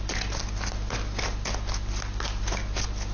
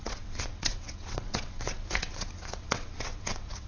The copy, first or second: second